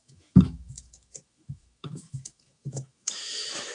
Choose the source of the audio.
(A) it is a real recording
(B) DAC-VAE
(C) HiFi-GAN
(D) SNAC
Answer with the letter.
B